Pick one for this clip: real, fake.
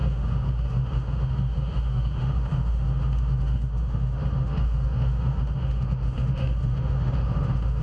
fake